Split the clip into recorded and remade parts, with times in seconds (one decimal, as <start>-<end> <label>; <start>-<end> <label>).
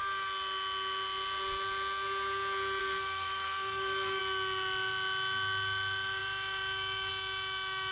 0.0-2.8 recorded; 2.8-4.2 remade; 4.2-7.9 recorded